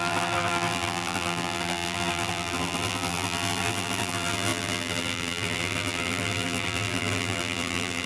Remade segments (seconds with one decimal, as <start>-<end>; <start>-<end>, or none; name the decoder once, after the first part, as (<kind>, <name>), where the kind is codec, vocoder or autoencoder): 0.0-8.1 (vocoder, BigVGAN v2)